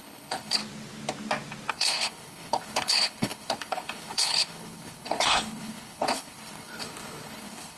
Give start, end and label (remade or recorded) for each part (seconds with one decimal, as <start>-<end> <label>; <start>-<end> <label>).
0.0-0.6 remade; 0.6-1.7 recorded; 1.7-7.8 remade